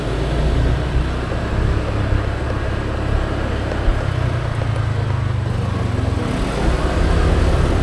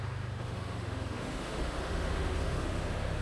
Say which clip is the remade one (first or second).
second